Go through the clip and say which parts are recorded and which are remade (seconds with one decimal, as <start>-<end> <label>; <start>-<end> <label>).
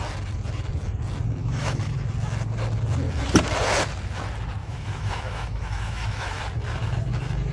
0.0-1.4 recorded; 1.4-1.9 remade; 1.9-4.6 recorded; 4.6-6.4 remade; 6.4-7.5 recorded